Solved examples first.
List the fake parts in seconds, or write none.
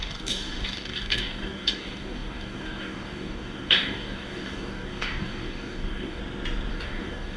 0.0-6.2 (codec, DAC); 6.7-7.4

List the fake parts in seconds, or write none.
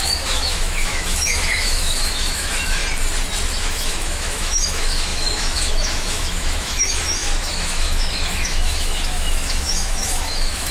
0.0-2.8 (autoencoder, DAC-VAE); 3.6-10.7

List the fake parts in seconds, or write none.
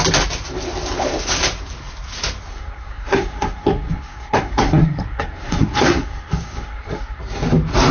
2.5-7.2 (codec, SNAC)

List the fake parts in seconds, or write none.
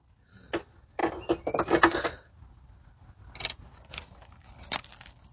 none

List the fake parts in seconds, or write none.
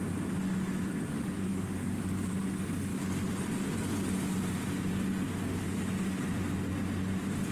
1.1-2.0 (autoencoder, DAC-VAE)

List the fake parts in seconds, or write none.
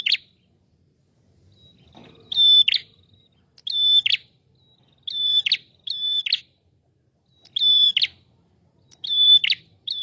none